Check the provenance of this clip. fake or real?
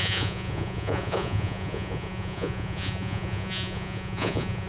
fake